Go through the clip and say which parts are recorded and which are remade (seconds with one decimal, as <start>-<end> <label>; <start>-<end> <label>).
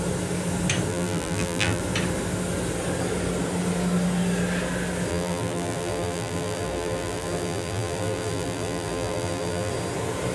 0.0-0.9 recorded; 0.9-1.8 remade; 1.8-5.1 recorded; 5.1-9.7 remade; 9.7-10.3 recorded